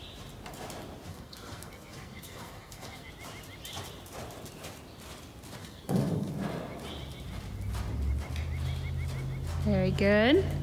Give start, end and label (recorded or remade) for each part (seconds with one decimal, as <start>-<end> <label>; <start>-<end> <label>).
0.0-1.1 recorded; 1.1-3.1 remade; 3.1-5.6 recorded; 5.6-6.3 remade; 6.3-10.6 recorded